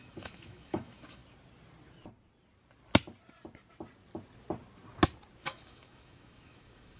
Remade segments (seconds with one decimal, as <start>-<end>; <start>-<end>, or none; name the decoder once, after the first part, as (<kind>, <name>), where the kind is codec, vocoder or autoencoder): 0.0-1.2 (autoencoder, DAC-VAE); 5.4-7.0